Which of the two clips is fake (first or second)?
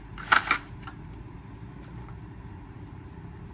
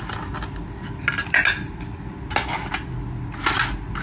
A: first